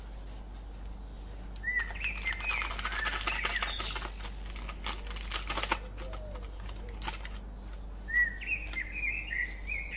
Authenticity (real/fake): real